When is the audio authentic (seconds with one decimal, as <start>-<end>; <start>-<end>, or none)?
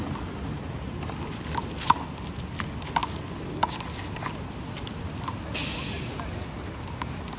0.0-7.4